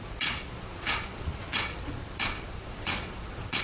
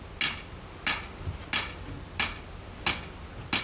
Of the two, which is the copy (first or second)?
first